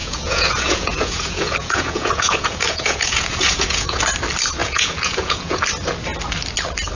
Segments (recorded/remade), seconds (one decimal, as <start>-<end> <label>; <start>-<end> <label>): 0.0-4.0 remade; 4.0-4.6 recorded; 4.6-5.6 remade; 5.6-6.9 recorded